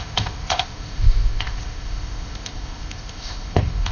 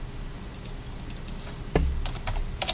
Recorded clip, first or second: second